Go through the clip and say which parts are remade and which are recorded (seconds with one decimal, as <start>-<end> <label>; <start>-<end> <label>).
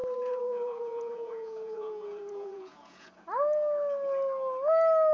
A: 0.0-3.1 remade; 3.1-5.1 recorded